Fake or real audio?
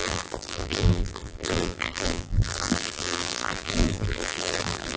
fake